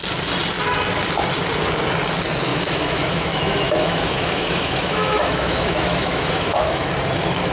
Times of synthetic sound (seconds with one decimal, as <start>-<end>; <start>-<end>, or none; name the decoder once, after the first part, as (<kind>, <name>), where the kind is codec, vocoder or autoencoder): 2.5-6.9 (autoencoder, DAC-VAE)